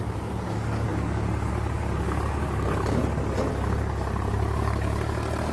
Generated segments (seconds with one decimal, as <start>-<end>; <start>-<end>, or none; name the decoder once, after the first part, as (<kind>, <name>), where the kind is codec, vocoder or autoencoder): 0.0-3.0 (codec, DAC); 3.5-5.5